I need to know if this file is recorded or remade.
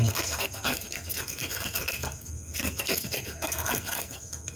remade